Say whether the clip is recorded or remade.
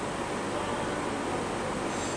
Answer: recorded